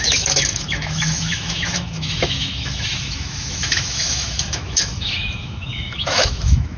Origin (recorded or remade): remade